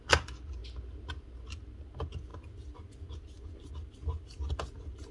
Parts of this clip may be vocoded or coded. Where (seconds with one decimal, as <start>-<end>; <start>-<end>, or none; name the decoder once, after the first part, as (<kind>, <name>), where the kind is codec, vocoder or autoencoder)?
none